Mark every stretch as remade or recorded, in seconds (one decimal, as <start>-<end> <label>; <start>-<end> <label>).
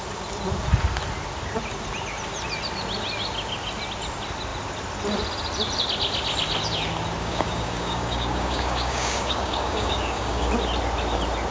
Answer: 0.0-7.2 recorded; 7.2-10.5 remade; 10.5-11.5 recorded